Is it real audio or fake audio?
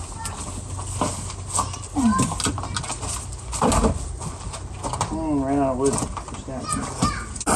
real